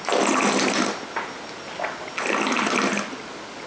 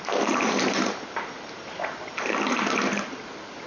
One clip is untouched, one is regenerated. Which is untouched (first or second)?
first